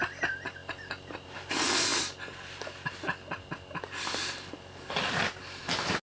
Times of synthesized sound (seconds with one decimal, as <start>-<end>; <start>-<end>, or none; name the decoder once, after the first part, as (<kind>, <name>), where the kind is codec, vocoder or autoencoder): none